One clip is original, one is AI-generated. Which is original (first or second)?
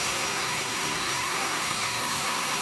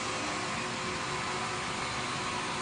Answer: second